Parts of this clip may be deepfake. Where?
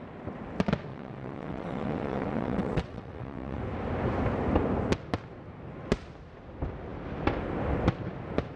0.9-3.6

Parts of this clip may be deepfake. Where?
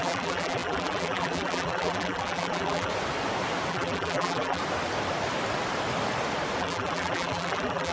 0.0-2.9; 3.7-4.6; 6.6-7.9